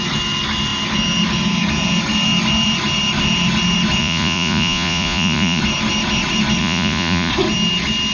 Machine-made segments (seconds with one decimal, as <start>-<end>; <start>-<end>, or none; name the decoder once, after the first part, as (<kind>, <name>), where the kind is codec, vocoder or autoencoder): 4.0-5.6 (vocoder, Vocos); 6.6-7.3